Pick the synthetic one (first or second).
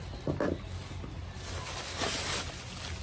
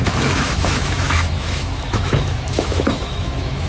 second